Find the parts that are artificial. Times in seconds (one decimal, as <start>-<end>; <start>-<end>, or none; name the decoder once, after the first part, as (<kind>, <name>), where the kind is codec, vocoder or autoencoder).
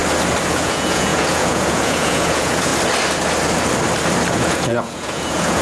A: 0.5-2.7 (vocoder, Vocos); 4.3-5.6